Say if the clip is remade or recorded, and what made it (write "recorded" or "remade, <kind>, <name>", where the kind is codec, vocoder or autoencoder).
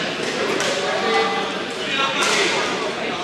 recorded